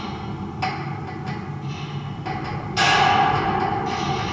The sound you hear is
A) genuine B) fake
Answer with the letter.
A